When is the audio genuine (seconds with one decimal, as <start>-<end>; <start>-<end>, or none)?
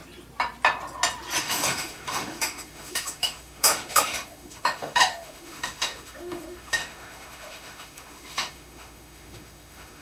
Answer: 0.0-1.4